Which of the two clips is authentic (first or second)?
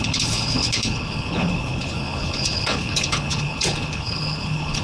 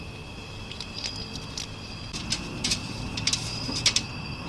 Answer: second